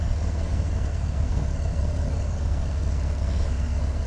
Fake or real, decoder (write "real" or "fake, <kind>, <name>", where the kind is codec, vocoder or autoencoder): fake, codec, SNAC